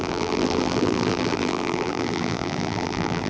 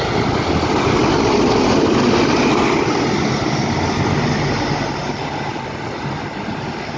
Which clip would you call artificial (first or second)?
first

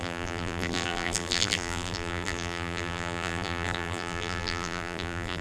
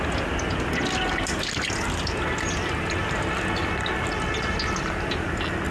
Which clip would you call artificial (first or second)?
first